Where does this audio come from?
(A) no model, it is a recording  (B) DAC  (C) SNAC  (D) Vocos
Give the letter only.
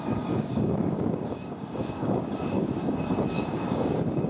B